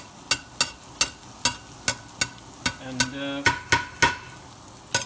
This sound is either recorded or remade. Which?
recorded